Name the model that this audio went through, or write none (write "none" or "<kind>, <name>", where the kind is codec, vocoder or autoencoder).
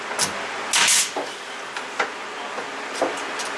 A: none